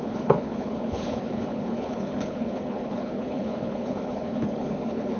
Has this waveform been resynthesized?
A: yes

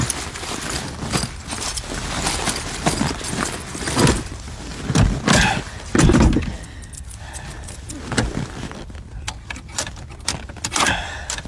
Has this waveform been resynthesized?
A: no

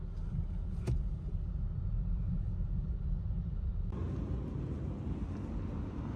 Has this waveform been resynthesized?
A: no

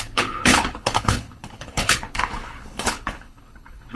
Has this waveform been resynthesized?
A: yes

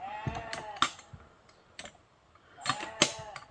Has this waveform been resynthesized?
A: no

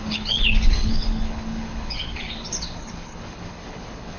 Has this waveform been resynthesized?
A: yes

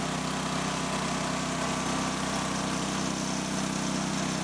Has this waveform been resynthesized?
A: no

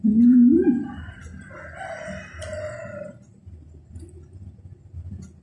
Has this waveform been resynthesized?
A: no